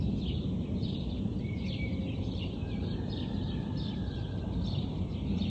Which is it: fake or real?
real